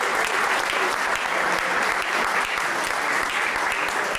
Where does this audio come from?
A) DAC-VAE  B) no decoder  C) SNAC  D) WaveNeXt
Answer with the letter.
B